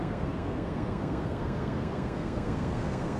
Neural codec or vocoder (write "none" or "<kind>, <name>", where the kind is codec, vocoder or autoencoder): codec, SNAC